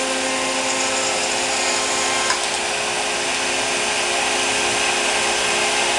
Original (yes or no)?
yes